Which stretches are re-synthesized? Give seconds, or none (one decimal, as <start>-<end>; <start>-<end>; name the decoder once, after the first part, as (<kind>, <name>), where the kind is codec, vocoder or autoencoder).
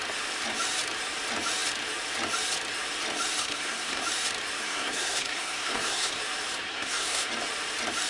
3.4-4.0 (codec, SNAC); 4.6-6.2; 6.7-7.3